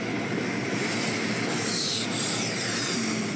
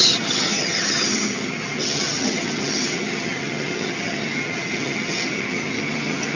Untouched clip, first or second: first